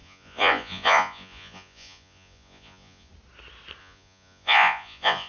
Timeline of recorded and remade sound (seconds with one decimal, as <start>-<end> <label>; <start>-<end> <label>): 0.0-3.1 remade; 3.1-3.8 recorded; 3.8-5.3 remade